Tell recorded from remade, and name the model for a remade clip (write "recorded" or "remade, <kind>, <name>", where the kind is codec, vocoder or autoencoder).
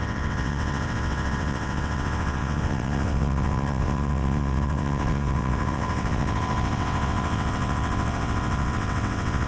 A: remade, vocoder, WaveNeXt